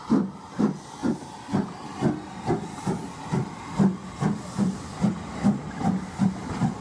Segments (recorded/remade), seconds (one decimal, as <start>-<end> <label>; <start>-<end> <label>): 0.0-6.8 recorded